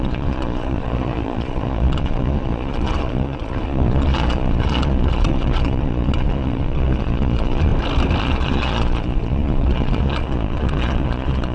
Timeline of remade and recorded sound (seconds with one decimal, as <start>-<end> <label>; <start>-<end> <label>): 0.0-7.7 remade; 7.7-8.2 recorded; 8.2-11.5 remade